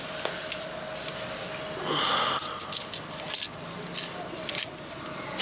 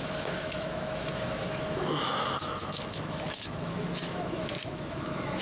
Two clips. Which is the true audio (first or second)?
first